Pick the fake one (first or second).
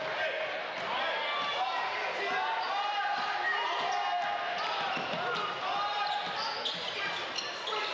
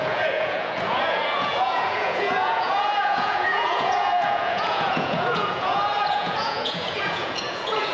second